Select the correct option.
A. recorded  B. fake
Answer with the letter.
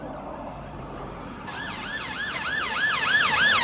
B